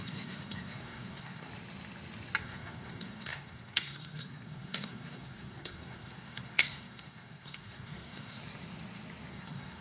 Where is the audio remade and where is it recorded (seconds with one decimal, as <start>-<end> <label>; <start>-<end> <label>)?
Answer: 0.0-1.5 remade; 1.5-2.4 recorded; 2.4-8.4 remade; 8.4-9.3 recorded; 9.3-9.8 remade